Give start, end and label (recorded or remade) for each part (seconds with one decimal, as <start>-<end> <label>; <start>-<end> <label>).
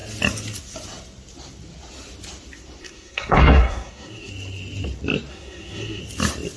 0.0-2.8 recorded; 2.8-4.3 remade; 4.3-5.3 recorded; 5.3-6.0 remade; 6.0-6.6 recorded